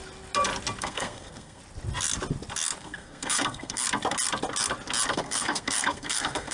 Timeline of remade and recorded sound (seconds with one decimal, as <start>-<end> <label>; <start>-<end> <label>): 0.0-0.8 recorded; 0.8-1.6 remade; 1.6-2.8 recorded; 2.8-3.8 remade; 3.8-5.1 recorded; 5.1-6.5 remade